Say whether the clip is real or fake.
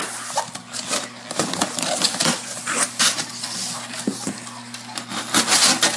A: real